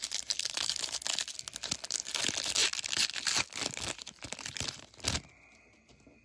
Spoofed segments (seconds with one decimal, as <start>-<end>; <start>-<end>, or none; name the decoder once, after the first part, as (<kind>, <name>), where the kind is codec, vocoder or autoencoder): none